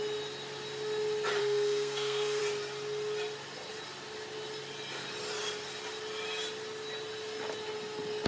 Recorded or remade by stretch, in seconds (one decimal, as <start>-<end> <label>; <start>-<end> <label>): 0.0-1.4 recorded; 1.4-2.4 remade; 2.4-8.3 recorded